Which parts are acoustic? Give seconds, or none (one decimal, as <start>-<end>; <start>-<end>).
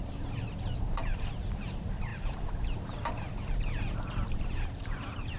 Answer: none